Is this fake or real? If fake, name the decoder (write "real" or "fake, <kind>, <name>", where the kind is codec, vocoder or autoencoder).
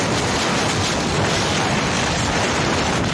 real